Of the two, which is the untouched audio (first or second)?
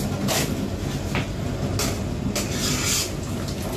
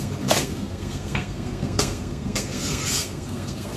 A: first